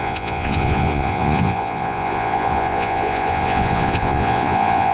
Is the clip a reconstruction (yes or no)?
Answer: yes